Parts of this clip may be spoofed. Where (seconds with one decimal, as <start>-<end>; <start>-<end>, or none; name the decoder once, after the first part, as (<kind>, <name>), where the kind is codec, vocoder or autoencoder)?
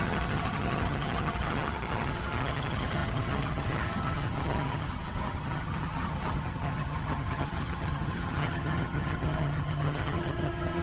0.0-10.8 (vocoder, HiFi-GAN)